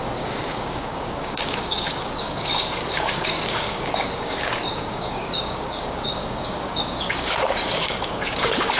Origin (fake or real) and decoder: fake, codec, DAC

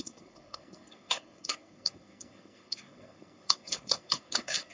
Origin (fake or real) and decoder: fake, codec, SNAC